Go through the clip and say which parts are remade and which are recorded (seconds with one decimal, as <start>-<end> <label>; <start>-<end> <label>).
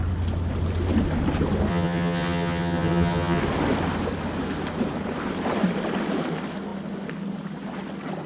0.0-1.7 recorded; 1.7-3.4 remade; 3.4-8.3 recorded